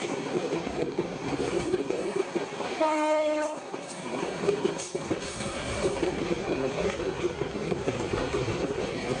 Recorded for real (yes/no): no